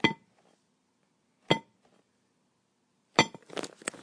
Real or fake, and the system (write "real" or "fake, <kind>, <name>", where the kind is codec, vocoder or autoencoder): real